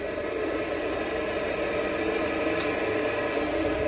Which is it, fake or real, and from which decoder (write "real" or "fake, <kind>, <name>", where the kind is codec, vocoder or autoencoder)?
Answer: real